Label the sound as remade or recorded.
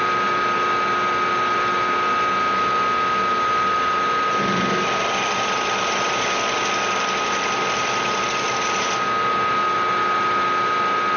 recorded